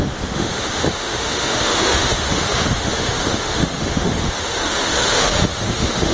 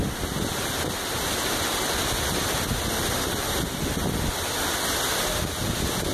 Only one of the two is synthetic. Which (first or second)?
first